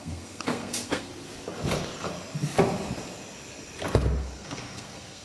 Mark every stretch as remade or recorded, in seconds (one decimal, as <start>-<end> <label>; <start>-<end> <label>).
0.0-1.1 remade; 1.1-4.2 recorded; 4.2-5.2 remade